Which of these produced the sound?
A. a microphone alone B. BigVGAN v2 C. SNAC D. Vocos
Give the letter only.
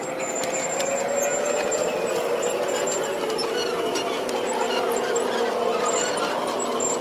A